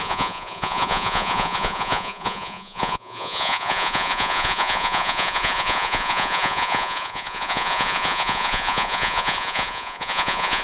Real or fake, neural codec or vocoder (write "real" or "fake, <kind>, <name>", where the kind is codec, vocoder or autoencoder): fake, vocoder, Vocos